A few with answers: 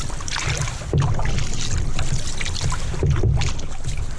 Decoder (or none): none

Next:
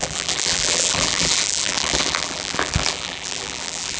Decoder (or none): vocoder, BigVGAN v2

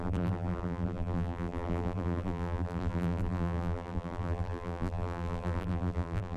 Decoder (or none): vocoder, BigVGAN v2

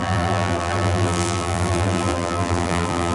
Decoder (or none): vocoder, BigVGAN v2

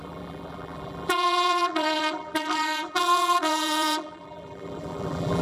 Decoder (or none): vocoder, BigVGAN v2